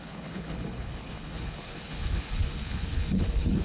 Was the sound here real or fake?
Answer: fake